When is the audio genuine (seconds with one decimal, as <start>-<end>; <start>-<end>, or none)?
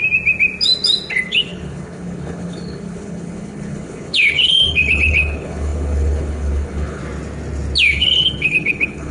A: 0.0-1.1; 7.0-7.9